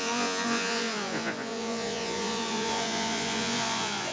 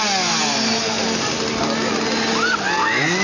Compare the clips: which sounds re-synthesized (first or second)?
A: first